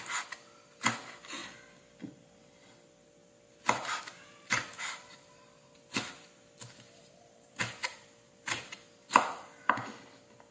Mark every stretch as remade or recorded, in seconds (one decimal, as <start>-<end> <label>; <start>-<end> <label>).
0.0-1.4 recorded; 1.4-3.2 remade; 3.2-10.5 recorded